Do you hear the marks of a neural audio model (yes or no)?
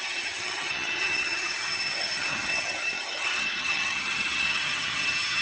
yes